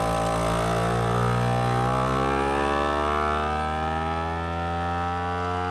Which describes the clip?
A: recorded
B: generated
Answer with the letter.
A